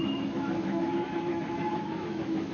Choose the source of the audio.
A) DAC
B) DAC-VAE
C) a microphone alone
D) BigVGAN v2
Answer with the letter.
B